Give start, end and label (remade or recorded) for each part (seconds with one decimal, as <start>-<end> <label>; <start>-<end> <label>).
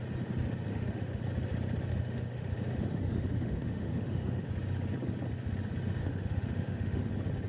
0.0-0.7 recorded; 0.7-1.2 remade; 1.2-1.9 recorded; 1.9-4.5 remade; 4.5-6.0 recorded; 6.0-7.1 remade; 7.1-7.5 recorded